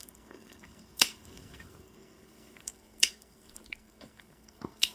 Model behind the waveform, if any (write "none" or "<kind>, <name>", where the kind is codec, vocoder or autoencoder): codec, SNAC